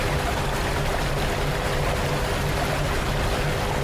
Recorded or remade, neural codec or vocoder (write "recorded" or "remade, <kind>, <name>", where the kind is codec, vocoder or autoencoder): recorded